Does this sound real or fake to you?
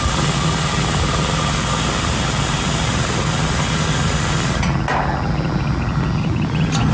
real